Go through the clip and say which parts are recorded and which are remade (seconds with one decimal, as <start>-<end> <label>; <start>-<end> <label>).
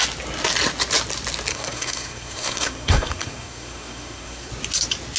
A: 0.0-1.5 recorded; 1.5-4.5 remade; 4.5-5.2 recorded